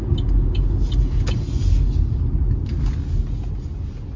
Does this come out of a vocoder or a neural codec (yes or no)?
no